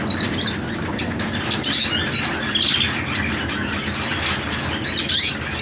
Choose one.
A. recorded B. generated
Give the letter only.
A